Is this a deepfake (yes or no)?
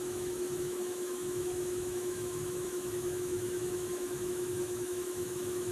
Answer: yes